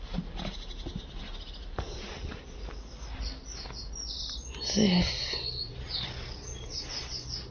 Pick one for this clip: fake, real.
real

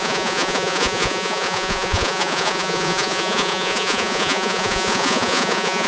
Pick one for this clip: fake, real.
fake